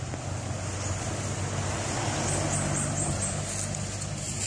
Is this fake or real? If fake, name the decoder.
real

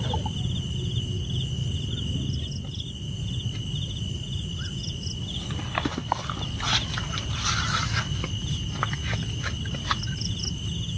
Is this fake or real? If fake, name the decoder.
real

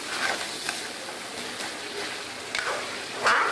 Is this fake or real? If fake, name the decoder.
real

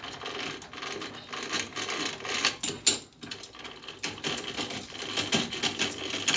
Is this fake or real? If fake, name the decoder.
real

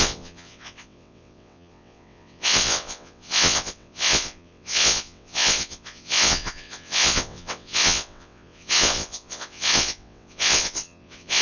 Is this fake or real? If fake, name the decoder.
fake, vocoder, WaveNeXt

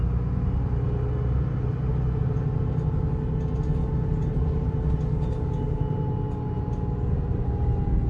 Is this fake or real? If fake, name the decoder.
real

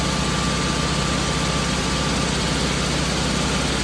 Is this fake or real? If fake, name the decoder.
real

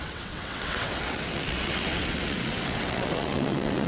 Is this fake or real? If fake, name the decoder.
fake, vocoder, WaveNeXt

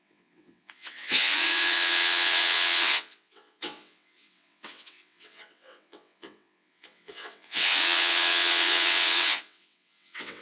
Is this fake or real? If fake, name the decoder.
fake, vocoder, WaveNeXt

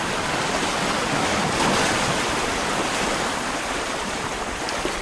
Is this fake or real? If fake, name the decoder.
real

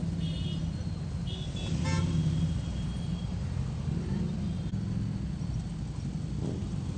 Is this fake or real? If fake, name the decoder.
real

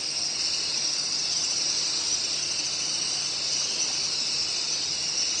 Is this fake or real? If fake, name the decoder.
real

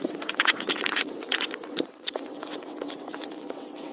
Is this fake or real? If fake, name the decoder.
fake, vocoder, WaveNeXt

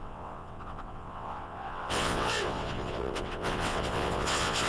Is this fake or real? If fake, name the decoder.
fake, vocoder, WaveNeXt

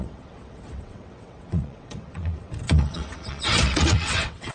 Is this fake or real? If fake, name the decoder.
fake, vocoder, WaveNeXt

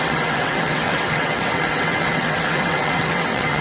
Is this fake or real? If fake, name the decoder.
fake, vocoder, WaveNeXt